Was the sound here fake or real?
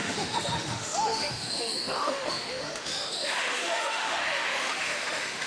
fake